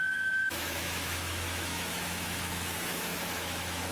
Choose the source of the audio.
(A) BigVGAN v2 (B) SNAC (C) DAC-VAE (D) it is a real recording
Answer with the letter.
C